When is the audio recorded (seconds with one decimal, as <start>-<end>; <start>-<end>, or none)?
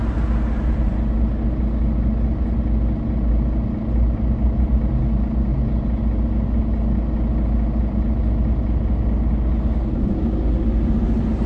0.0-11.5